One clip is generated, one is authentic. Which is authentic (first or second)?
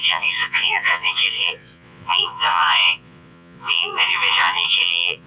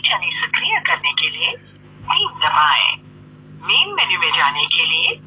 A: second